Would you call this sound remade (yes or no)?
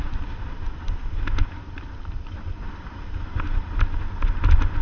no